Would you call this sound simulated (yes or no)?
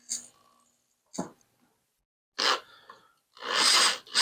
no